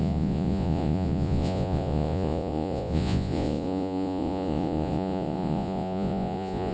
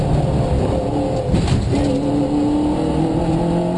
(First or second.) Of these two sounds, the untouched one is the second